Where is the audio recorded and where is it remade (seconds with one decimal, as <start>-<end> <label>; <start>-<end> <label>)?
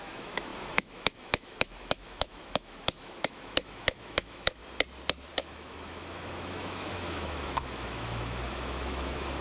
0.0-4.6 remade; 4.6-5.3 recorded; 5.3-9.4 remade